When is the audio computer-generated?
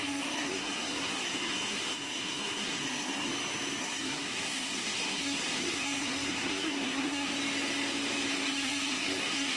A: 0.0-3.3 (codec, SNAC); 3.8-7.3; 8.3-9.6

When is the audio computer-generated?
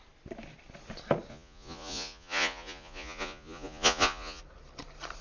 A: 1.3-4.4 (vocoder, Vocos)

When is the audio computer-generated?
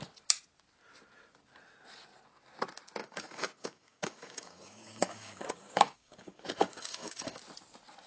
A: 3.0-7.4 (codec, DAC)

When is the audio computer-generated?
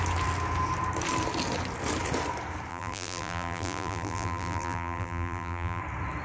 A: 2.7-5.8 (vocoder, BigVGAN v2)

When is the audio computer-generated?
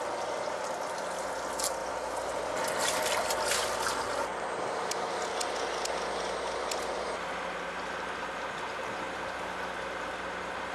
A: none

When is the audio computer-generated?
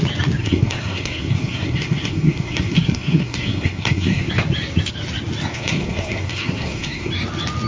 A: 0.4-4.3 (codec, SNAC); 5.5-7.1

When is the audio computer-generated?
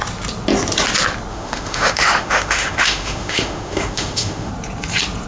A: 1.3-4.5 (autoencoder, DAC-VAE)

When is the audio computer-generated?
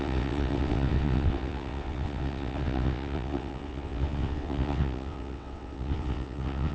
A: 0.0-6.7 (vocoder, WaveNeXt)